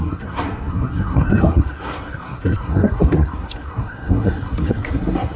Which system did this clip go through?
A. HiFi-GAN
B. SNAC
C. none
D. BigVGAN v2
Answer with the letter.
B